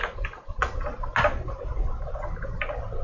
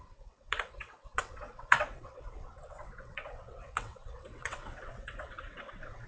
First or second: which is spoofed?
second